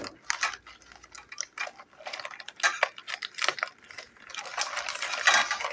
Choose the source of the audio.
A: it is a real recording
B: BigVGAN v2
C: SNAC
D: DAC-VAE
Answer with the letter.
A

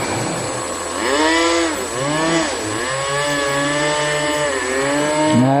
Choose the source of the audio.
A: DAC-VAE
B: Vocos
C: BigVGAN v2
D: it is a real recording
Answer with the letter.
D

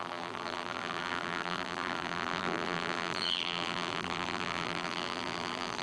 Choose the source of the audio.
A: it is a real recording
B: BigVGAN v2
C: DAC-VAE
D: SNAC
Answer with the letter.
B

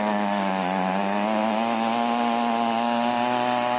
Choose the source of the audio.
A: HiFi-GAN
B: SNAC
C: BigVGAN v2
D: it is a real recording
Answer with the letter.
D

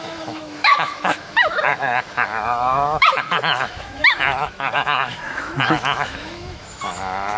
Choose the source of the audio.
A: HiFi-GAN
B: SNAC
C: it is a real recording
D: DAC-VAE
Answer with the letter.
D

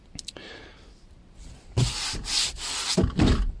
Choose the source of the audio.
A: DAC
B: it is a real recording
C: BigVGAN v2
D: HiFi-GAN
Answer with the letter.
C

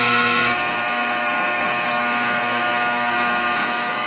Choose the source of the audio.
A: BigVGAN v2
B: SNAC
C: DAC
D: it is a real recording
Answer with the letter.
B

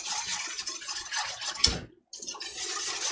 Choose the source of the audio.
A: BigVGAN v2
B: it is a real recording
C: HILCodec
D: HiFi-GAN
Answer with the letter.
B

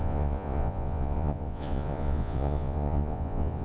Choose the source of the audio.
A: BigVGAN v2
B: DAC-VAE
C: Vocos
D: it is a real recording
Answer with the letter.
C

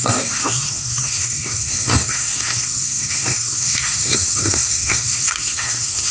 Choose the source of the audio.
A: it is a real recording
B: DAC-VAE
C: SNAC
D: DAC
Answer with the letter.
C